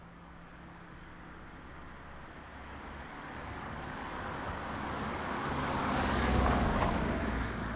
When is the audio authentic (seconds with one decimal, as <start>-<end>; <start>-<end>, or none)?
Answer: 1.1-3.0